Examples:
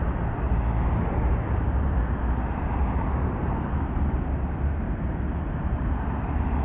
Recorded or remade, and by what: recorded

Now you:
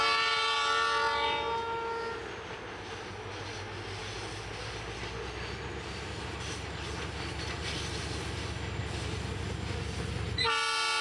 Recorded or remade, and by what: recorded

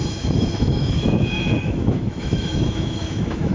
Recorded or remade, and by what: remade, autoencoder, DAC-VAE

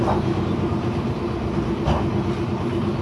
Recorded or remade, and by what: recorded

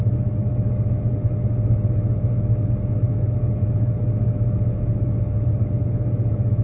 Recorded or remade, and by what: remade, autoencoder, DAC-VAE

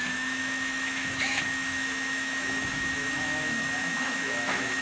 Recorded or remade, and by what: remade, autoencoder, DAC-VAE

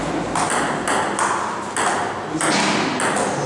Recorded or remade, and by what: recorded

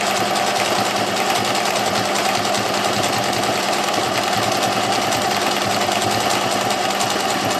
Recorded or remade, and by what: recorded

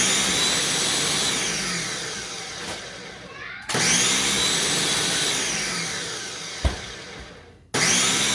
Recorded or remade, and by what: recorded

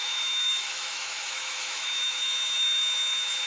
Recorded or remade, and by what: remade, autoencoder, DAC-VAE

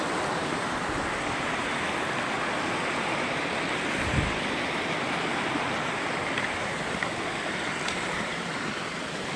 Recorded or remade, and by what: recorded